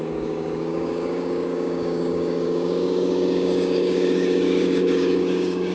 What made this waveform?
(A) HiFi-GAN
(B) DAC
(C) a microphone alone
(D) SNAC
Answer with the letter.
B